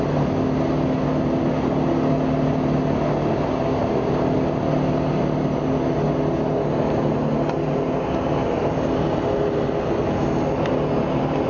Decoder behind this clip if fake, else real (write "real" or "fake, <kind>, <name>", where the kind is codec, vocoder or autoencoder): real